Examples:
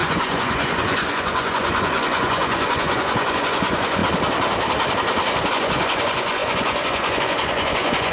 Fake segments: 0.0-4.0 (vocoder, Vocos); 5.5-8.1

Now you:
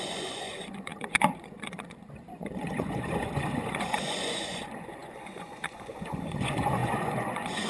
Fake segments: 0.0-7.7 (vocoder, Vocos)

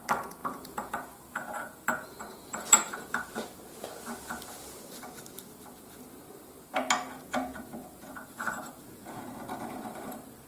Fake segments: 0.4-3.6 (vocoder, Vocos); 7.8-9.3

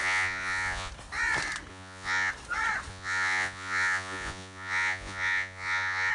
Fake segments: 0.0-0.9 (vocoder, Vocos); 1.7-2.3; 2.9-6.1

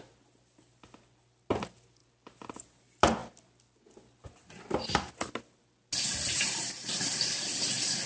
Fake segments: none

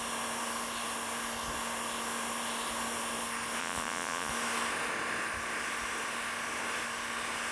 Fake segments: 3.6-4.3 (vocoder, Vocos)

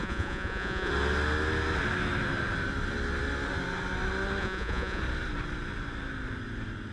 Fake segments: 0.0-0.9 (vocoder, Vocos); 4.4-5.0